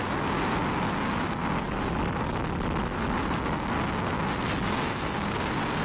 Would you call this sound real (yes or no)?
yes